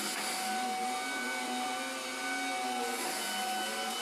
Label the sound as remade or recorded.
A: recorded